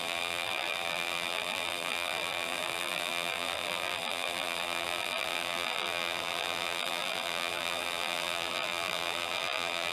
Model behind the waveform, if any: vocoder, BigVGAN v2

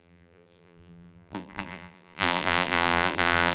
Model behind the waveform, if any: vocoder, BigVGAN v2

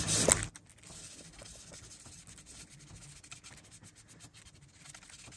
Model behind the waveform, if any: none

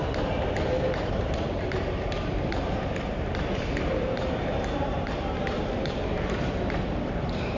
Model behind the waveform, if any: vocoder, BigVGAN v2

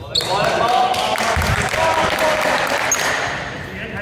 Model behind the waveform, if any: none